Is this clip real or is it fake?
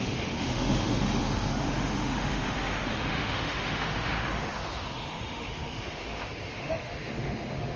fake